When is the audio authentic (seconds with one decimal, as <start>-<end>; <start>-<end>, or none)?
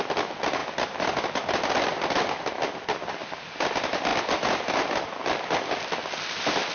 0.0-6.7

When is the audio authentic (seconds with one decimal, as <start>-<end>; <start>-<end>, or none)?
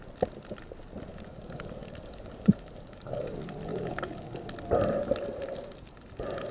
0.0-1.1; 3.3-3.7; 4.4-6.5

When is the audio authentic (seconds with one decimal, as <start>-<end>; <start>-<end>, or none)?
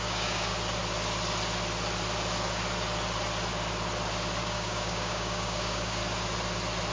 0.5-4.4; 6.0-6.9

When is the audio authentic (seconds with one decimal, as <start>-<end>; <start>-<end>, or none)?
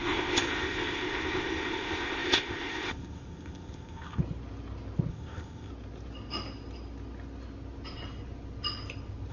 4.2-5.1; 5.7-9.3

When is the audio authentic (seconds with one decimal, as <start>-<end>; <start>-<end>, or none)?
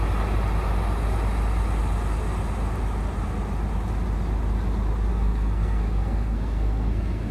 0.0-5.1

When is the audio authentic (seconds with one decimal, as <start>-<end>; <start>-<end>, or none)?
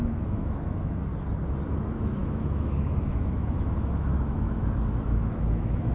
1.1-1.7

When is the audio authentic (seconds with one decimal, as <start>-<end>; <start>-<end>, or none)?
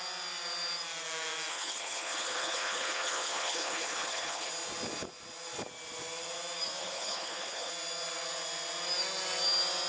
0.0-1.5; 4.5-6.8; 7.7-9.9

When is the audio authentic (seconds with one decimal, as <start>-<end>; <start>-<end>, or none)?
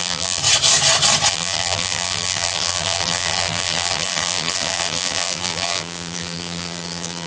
0.4-1.3